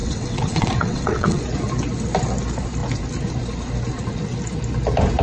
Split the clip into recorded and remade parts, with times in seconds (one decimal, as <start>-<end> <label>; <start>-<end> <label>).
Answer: 0.0-1.4 remade; 1.4-5.2 recorded